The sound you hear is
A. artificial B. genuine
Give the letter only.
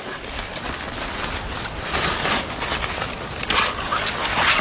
B